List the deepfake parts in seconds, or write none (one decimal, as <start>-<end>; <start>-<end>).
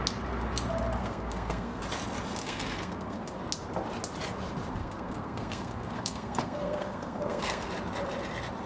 1.0-1.8; 2.4-3.4; 4.8-7.7